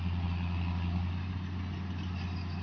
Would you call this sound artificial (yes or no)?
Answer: no